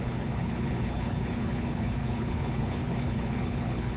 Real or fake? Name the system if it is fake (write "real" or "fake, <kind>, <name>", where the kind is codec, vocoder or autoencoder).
fake, codec, HILCodec